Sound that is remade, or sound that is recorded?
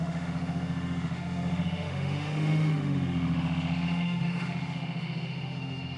remade